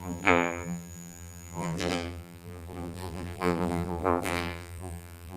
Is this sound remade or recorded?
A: remade